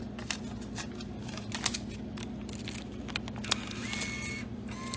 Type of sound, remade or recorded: recorded